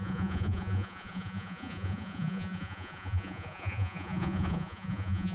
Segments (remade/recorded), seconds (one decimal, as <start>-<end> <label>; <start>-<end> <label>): 0.0-5.3 remade